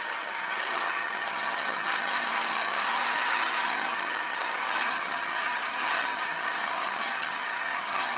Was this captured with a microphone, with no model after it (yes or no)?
no